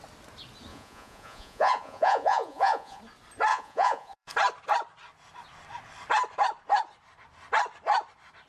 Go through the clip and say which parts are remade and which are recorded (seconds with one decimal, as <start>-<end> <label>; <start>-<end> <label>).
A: 0.0-0.7 recorded; 0.7-3.0 remade; 3.0-3.5 recorded; 3.5-4.3 remade; 4.3-8.5 recorded